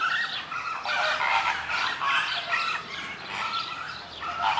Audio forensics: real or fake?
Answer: fake